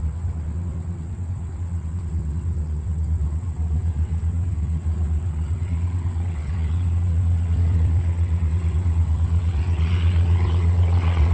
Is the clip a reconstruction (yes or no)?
yes